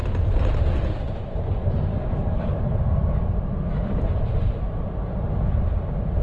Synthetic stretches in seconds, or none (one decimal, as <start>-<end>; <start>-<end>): 1.9-2.6

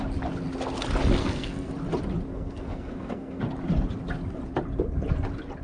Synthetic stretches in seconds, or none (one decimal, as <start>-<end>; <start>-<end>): 1.2-1.7; 2.3-3.4